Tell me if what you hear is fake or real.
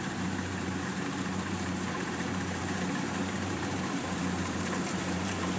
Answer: fake